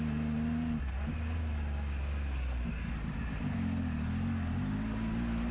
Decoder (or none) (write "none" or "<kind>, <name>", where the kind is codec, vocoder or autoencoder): none